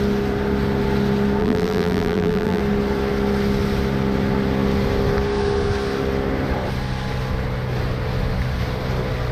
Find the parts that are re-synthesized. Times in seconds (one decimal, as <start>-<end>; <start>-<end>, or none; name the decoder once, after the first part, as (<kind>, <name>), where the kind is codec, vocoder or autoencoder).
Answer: 1.4-2.6 (vocoder, BigVGAN v2)